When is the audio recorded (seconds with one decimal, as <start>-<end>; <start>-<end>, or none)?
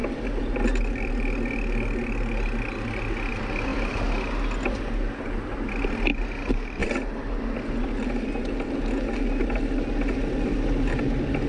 0.0-11.5